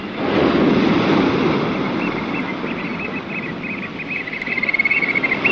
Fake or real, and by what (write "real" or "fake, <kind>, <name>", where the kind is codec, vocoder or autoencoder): real